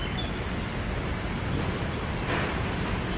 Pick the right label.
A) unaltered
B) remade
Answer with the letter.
A